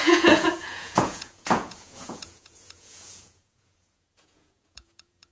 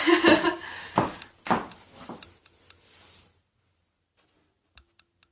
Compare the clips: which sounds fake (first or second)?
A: first